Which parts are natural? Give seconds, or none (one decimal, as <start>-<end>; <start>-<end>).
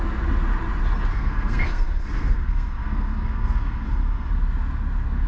0.0-1.1; 4.3-5.3